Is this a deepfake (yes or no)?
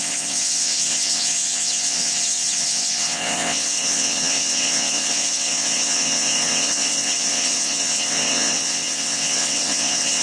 yes